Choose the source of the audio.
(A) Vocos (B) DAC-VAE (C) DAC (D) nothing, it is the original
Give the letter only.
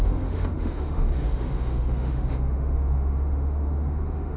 B